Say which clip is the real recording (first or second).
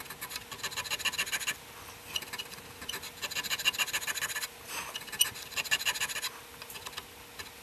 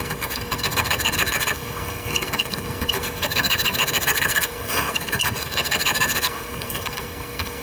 first